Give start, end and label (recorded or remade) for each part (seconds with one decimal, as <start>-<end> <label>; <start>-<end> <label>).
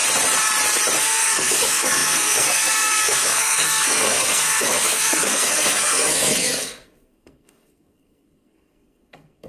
0.0-1.0 recorded; 1.0-9.5 remade